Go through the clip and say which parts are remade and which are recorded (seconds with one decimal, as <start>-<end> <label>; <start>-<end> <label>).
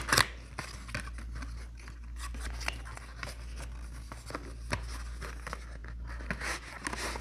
0.0-7.2 recorded